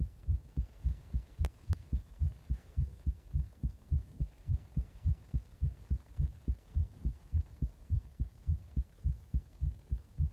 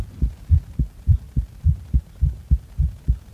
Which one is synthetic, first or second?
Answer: first